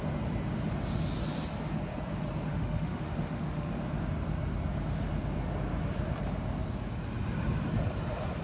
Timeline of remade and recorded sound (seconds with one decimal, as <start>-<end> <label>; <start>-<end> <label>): 0.0-2.5 recorded; 2.5-3.8 remade; 3.8-8.4 recorded